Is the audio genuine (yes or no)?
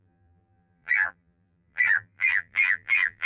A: no